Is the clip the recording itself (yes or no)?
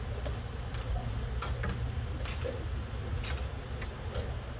yes